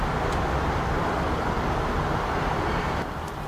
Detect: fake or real real